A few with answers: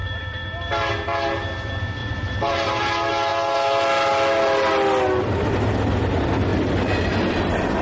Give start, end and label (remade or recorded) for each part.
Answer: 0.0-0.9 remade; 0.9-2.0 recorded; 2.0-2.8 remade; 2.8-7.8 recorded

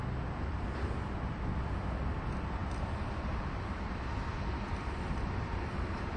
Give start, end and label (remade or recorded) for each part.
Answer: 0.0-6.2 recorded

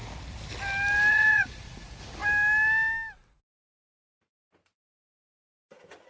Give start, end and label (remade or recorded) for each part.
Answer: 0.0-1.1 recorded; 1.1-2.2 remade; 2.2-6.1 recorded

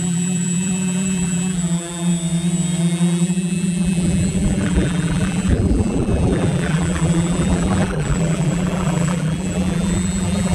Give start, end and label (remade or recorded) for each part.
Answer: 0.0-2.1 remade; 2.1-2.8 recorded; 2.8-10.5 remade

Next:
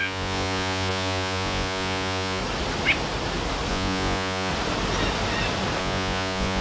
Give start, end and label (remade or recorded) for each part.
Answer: 0.0-2.4 remade; 2.4-3.7 recorded; 3.7-4.5 remade; 4.5-5.8 recorded; 5.8-6.6 remade

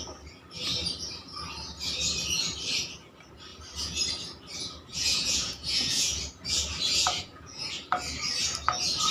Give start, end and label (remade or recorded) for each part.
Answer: 0.0-4.9 recorded; 4.9-6.2 remade; 6.2-7.0 recorded; 7.0-7.7 remade; 7.7-9.1 recorded

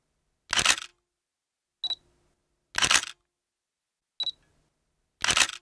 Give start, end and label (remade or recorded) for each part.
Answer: 0.0-5.6 recorded